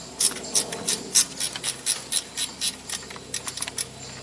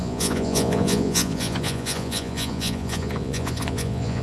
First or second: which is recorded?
first